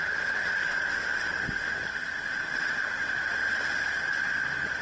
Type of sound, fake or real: real